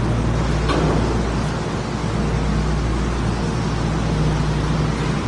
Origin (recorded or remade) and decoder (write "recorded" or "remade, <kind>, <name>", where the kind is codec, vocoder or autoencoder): recorded